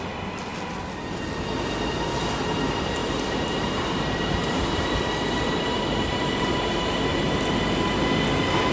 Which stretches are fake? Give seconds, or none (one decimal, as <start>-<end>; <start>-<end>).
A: 3.0-7.3